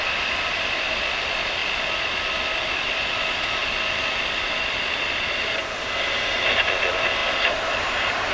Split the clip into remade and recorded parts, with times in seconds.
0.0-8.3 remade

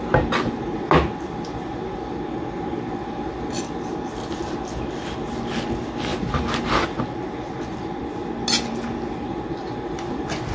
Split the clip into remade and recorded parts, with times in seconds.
0.0-10.5 recorded

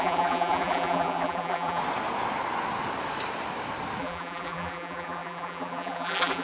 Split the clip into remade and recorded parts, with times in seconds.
0.0-1.8 remade; 1.8-4.0 recorded; 4.0-6.4 remade

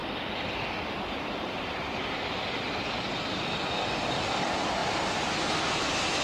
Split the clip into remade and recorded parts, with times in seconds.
0.0-3.6 remade; 3.6-6.2 recorded